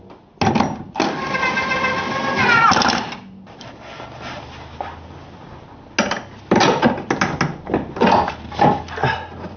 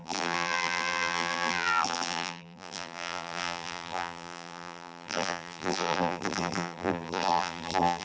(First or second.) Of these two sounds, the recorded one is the first